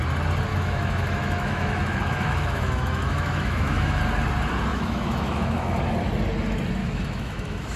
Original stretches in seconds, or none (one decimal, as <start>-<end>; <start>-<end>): 0.0-0.5; 4.0-4.7; 5.8-6.8